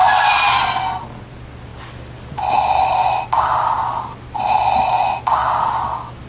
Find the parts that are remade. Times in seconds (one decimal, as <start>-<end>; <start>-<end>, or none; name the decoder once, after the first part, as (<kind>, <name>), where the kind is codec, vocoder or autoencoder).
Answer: none